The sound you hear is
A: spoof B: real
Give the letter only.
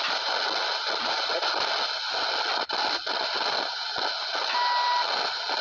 B